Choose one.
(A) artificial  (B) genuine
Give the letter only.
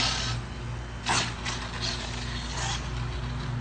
B